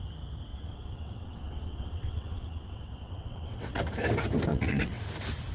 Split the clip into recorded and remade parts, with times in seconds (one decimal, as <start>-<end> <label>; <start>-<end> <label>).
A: 0.0-0.5 recorded; 0.5-3.8 remade; 3.8-4.5 recorded; 4.5-5.0 remade; 5.0-5.5 recorded